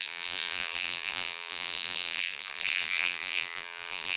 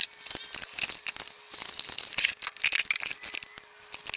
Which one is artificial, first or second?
first